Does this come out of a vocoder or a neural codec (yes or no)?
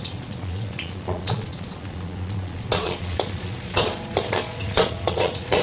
yes